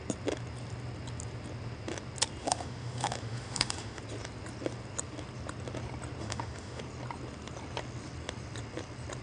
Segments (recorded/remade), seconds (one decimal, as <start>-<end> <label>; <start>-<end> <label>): 0.0-2.4 recorded; 2.4-4.0 remade; 4.0-6.2 recorded; 6.2-6.8 remade; 6.8-9.2 recorded